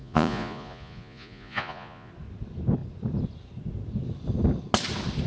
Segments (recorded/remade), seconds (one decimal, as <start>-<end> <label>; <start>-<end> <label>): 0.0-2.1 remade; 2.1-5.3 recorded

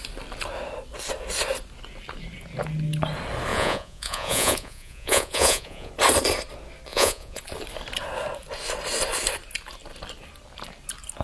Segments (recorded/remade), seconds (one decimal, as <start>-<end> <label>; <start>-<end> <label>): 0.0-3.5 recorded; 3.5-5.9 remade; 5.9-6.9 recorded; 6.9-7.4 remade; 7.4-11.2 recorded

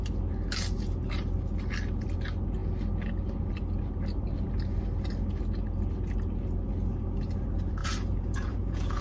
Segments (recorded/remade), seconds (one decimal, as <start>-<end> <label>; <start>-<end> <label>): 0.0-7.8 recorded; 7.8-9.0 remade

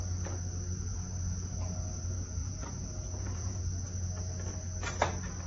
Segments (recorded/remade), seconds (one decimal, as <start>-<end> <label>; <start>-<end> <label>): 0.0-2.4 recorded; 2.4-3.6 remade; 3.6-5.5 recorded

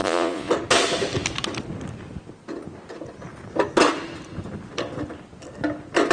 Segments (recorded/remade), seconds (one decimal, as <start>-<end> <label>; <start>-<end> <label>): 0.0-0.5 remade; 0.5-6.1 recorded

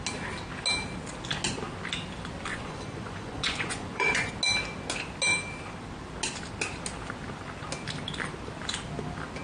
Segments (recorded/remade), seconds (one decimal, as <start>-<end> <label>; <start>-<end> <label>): 0.0-2.5 recorded; 2.5-4.3 remade; 4.3-9.4 recorded

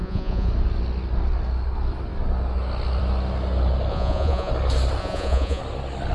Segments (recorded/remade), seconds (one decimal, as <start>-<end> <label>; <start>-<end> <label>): 0.0-0.5 remade; 0.5-3.9 recorded; 3.9-4.5 remade; 4.5-5.0 recorded; 5.0-5.6 remade; 5.6-6.1 recorded